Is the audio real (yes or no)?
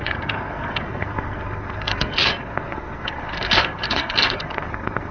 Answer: no